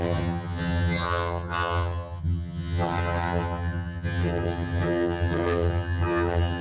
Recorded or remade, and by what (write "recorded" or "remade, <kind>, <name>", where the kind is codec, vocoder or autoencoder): remade, vocoder, HiFi-GAN